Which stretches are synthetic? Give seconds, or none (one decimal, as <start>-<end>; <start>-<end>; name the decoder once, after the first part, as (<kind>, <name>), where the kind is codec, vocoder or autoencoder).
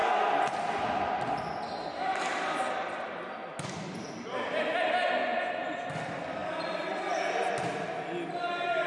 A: none